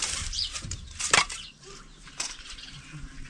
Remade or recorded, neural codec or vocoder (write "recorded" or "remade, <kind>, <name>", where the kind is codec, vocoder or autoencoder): remade, vocoder, BigVGAN v2